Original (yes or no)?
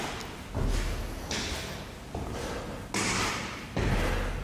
yes